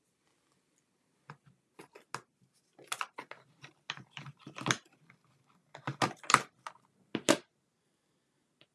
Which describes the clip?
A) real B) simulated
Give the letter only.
A